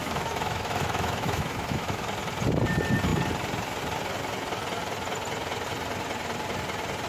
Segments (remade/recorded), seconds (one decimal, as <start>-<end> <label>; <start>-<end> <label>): 0.0-2.1 remade; 2.1-7.1 recorded